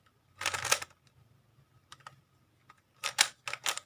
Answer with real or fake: real